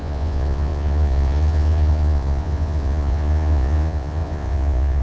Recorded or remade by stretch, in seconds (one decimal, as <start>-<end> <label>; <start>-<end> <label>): 0.0-5.0 remade